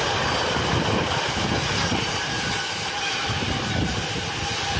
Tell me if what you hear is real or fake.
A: real